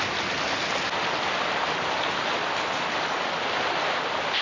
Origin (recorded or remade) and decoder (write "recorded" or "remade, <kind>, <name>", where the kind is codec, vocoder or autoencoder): recorded